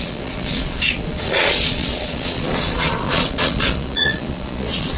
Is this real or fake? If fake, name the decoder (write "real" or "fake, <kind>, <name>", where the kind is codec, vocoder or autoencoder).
fake, vocoder, Vocos